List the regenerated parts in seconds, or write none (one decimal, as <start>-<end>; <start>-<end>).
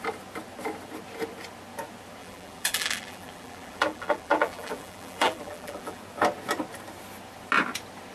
2.2-6.0